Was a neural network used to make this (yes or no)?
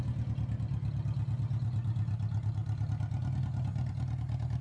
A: no